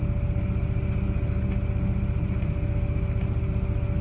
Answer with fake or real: real